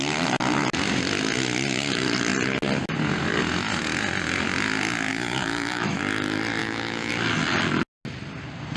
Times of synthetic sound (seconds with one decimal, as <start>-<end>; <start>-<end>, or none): 5.1-6.0; 6.6-7.1